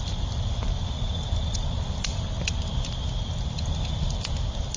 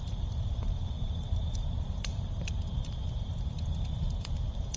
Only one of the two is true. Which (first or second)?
first